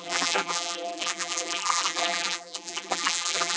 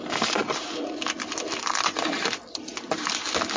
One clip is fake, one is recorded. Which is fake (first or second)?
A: first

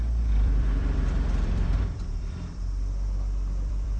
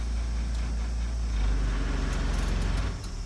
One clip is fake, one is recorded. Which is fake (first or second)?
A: first